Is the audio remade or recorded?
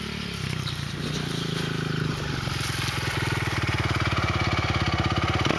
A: recorded